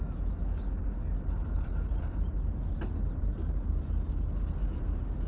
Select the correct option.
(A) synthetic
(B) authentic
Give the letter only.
B